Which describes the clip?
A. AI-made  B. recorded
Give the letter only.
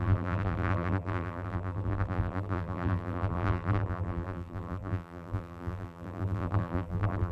A